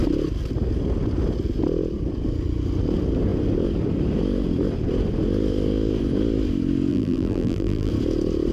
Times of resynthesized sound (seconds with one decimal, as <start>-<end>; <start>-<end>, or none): 6.9-7.9